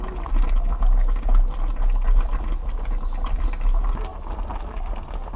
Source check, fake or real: real